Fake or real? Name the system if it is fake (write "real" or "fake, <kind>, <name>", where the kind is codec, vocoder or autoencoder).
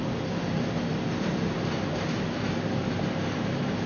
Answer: fake, vocoder, BigVGAN v2